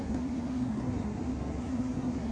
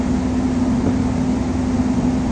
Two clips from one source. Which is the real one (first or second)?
second